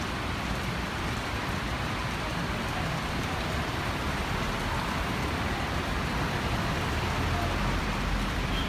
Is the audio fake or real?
fake